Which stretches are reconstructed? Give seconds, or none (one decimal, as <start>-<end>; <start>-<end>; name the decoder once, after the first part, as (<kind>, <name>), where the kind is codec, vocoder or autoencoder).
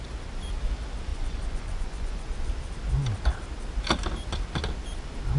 1.1-2.3 (vocoder, Vocos)